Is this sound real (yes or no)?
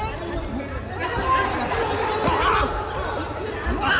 yes